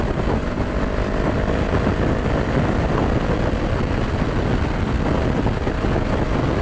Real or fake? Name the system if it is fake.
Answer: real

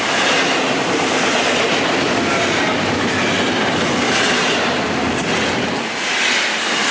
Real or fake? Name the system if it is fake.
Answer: real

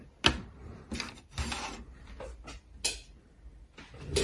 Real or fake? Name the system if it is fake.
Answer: real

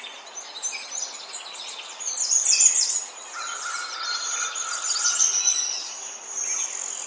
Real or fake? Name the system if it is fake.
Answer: real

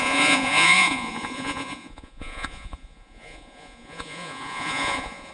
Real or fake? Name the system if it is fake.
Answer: fake, vocoder, Vocos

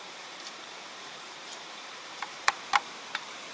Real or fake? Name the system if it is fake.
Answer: fake, vocoder, BigVGAN v2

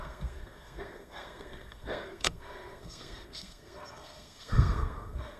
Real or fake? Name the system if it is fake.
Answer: fake, codec, SNAC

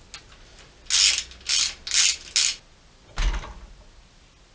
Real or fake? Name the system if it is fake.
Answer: real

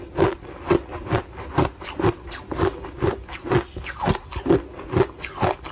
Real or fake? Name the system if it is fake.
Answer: real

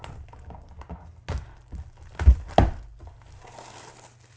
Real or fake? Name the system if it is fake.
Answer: real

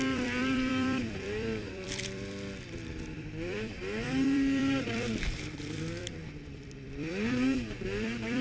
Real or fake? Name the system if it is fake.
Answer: fake, vocoder, BigVGAN v2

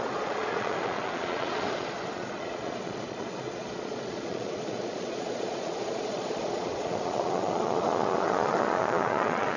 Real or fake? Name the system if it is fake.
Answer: fake, vocoder, Vocos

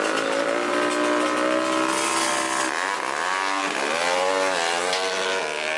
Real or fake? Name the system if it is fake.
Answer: real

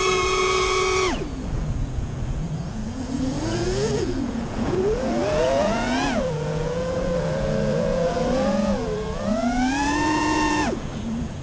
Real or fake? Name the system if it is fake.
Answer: fake, vocoder, Vocos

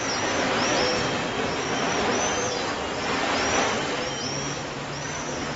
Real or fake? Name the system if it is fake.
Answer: real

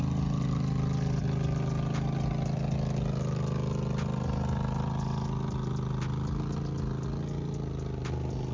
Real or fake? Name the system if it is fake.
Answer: real